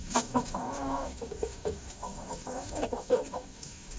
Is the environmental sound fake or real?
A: fake